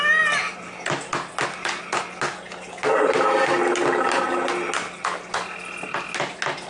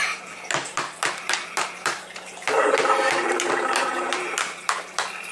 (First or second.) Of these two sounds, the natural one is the first